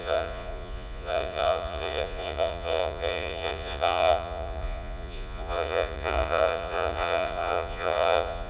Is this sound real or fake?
fake